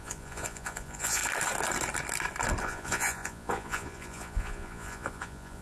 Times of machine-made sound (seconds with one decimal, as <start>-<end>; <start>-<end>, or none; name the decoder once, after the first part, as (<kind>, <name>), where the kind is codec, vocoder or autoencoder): 0.0-1.2 (vocoder, Vocos); 2.6-5.6